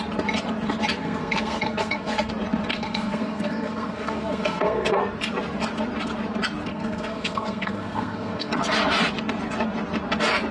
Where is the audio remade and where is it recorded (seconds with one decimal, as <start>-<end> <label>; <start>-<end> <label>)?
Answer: 0.0-1.0 recorded; 1.0-2.3 remade; 2.3-2.7 recorded; 2.7-5.0 remade; 5.0-6.7 recorded; 6.7-8.5 remade; 8.5-10.5 recorded